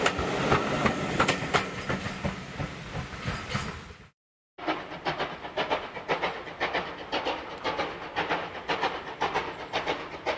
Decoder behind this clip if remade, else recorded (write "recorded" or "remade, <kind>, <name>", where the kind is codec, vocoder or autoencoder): recorded